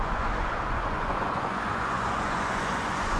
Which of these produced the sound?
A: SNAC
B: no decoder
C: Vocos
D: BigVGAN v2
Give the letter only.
C